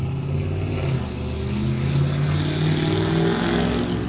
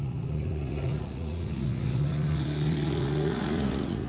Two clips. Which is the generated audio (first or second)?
second